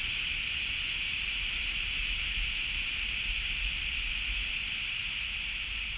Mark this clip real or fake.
real